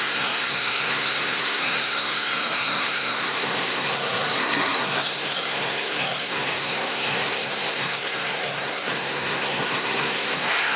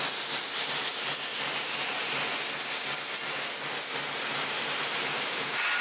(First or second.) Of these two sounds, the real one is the second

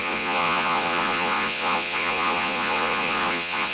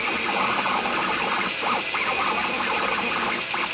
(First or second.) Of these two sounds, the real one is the second